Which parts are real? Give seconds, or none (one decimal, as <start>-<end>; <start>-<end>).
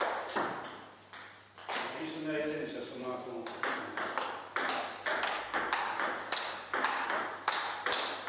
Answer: 0.0-8.3